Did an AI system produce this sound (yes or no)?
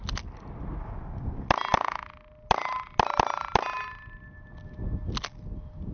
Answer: no